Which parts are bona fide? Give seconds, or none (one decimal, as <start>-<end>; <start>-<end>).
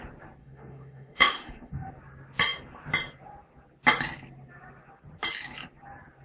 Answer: 0.0-0.4; 1.9-6.2